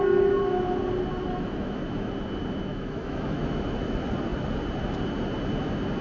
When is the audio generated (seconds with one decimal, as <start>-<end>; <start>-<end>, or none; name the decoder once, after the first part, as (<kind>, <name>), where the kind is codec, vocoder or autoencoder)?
1.1-2.1 (autoencoder, DAC-VAE); 2.7-3.4

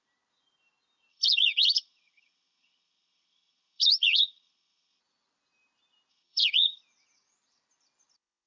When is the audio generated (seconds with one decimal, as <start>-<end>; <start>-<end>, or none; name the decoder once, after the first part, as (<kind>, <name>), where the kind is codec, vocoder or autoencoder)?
1.1-5.0 (vocoder, HiFi-GAN); 6.1-6.8

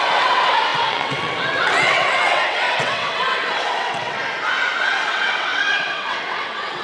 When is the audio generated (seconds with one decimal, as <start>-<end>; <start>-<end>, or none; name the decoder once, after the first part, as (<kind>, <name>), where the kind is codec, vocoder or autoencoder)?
0.0-4.2 (vocoder, WaveNeXt); 4.8-6.8